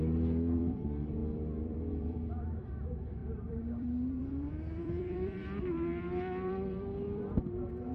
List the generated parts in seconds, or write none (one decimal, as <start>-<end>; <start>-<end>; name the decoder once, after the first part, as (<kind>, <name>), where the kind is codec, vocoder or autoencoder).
0.0-7.9 (vocoder, BigVGAN v2)